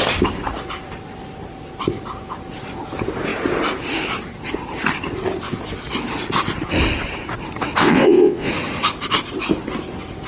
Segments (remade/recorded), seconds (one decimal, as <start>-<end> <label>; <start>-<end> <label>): 0.0-7.8 recorded; 7.8-8.5 remade; 8.5-10.3 recorded